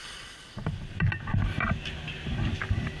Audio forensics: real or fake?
real